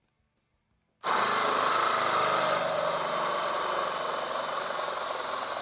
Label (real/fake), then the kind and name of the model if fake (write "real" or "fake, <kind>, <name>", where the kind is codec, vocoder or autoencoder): real